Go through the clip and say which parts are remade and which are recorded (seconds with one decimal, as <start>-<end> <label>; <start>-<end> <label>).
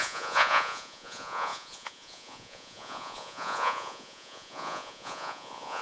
0.0-5.8 remade